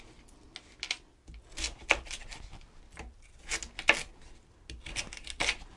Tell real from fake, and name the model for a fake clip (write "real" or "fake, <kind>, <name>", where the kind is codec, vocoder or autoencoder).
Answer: real